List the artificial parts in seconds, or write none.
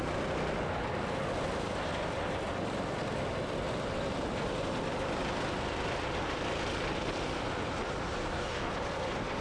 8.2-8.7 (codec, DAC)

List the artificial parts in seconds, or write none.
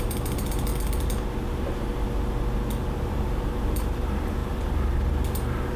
0.0-0.7 (vocoder, BigVGAN v2); 3.0-5.8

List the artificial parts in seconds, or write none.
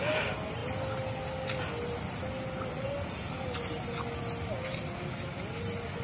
none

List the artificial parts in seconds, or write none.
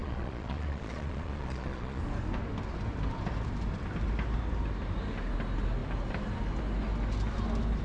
0.0-2.0 (vocoder, Vocos)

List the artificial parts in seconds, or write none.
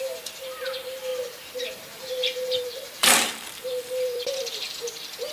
0.0-1.1 (vocoder, BigVGAN v2); 1.6-5.3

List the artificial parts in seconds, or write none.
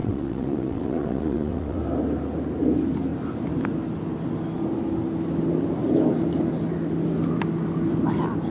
0.0-1.8 (vocoder, WaveNeXt)